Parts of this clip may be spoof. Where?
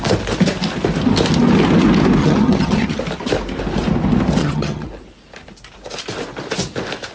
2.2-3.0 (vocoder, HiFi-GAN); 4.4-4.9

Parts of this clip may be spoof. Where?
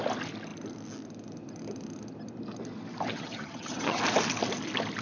3.1-4.0 (vocoder, HiFi-GAN)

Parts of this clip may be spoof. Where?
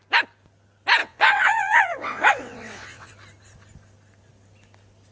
1.0-3.1 (vocoder, WaveNeXt)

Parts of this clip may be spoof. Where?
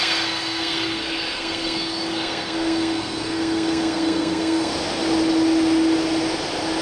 0.0-4.7 (codec, SNAC)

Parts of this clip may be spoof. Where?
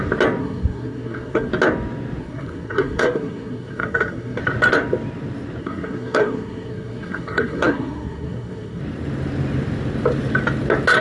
0.4-1.5 (codec, SNAC); 2.2-4.4; 5.6-8.8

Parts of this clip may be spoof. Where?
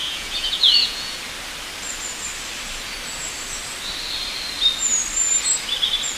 0.0-1.2 (vocoder, Vocos)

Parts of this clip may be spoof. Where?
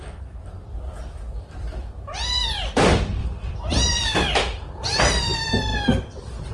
0.0-6.5 (vocoder, BigVGAN v2)